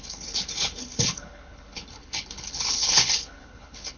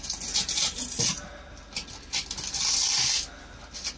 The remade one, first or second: first